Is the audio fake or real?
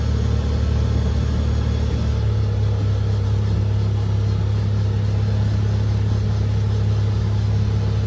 real